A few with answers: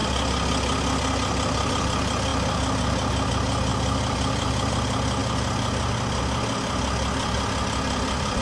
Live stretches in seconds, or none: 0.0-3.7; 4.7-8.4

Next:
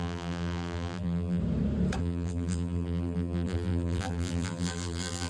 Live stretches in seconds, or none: 1.4-2.0

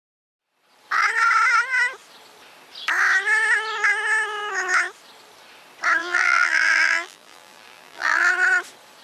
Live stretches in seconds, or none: 0.0-6.0; 8.3-9.0

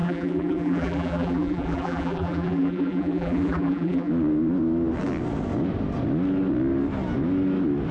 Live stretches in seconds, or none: 4.1-7.9

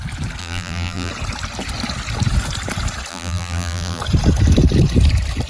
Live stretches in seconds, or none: 0.0-0.4; 1.1-3.1; 4.0-5.5

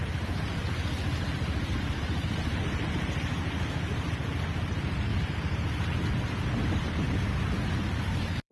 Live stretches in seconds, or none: 0.5-1.9; 3.3-4.6; 5.1-7.8

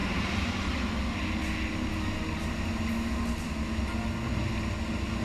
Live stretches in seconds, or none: 0.7-5.2